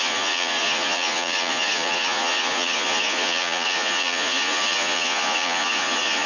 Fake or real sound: fake